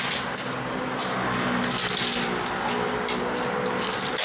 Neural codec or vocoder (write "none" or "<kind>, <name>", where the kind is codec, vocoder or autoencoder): none